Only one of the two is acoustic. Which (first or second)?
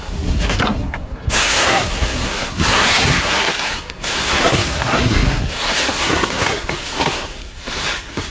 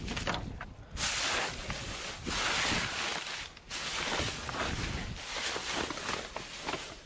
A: second